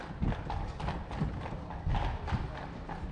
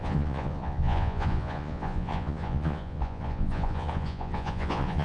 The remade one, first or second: second